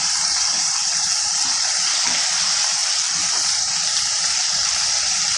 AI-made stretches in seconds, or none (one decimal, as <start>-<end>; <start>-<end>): 0.0-5.4